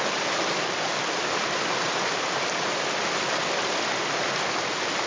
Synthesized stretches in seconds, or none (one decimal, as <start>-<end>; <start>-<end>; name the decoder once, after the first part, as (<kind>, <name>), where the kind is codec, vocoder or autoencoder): none